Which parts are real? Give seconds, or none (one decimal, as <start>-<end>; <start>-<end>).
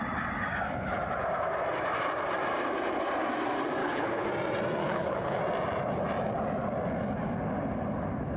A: 0.0-3.8; 4.3-4.8; 5.4-8.4